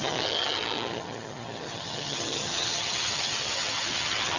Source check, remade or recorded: remade